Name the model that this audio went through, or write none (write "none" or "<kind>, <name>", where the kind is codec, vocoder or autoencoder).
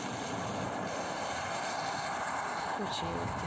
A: none